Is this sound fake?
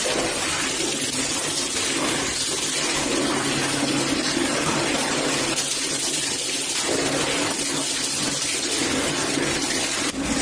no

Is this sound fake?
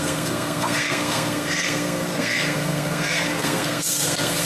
yes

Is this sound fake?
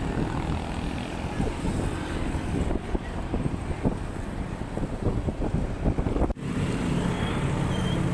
no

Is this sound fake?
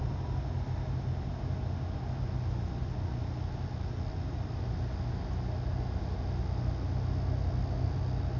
no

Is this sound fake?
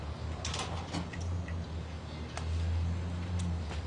no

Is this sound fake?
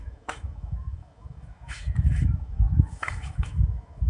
yes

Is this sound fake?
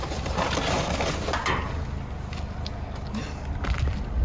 no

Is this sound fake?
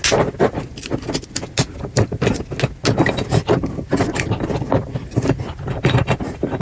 no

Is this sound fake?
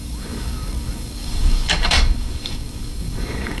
yes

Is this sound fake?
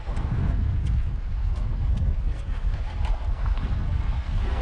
yes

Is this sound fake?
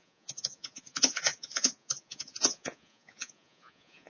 yes